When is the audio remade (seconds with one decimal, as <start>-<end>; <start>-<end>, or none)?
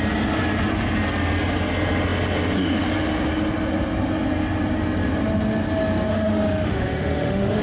6.1-7.6